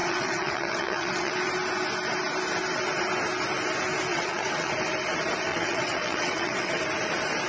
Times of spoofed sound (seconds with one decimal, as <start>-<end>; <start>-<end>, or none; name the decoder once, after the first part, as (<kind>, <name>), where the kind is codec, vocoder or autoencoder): 0.0-1.3 (vocoder, WaveNeXt); 4.1-4.7; 5.5-6.8